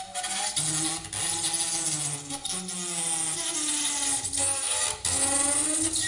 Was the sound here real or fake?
real